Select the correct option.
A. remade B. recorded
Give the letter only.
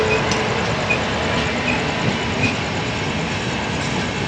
B